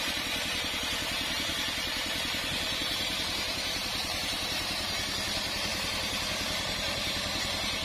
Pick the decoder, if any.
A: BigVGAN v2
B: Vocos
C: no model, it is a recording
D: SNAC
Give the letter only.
A